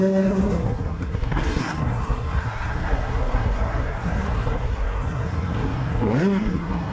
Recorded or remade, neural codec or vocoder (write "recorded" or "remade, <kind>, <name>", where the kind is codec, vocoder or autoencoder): remade, codec, SNAC